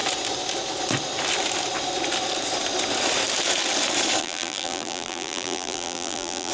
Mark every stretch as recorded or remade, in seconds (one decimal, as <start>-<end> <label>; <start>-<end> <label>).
0.0-4.2 recorded; 4.2-6.5 remade